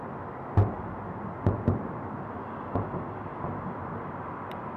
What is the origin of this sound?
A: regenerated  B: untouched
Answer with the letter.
B